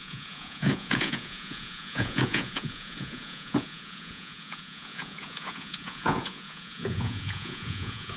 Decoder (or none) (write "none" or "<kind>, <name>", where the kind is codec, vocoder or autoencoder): vocoder, Vocos